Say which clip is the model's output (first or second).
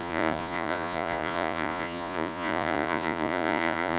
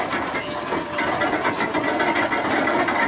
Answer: first